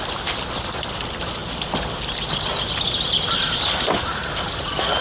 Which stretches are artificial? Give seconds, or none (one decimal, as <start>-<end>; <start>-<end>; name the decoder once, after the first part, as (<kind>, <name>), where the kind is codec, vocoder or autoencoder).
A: none